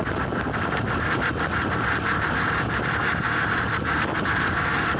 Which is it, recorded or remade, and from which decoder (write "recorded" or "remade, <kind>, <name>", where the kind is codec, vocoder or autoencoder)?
recorded